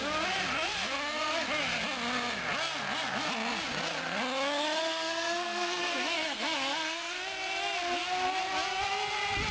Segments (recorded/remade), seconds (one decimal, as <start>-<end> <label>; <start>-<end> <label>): 0.0-4.8 recorded; 4.8-7.2 remade; 7.2-9.5 recorded